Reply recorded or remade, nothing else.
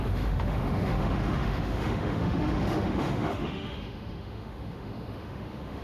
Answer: remade